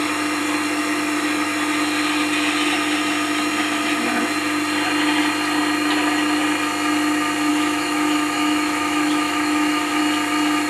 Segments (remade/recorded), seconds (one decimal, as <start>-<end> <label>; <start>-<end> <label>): 0.0-7.5 recorded; 7.5-10.0 remade; 10.0-10.7 recorded